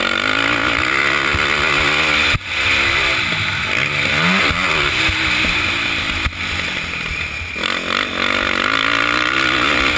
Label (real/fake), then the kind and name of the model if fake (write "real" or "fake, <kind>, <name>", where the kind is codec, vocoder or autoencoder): real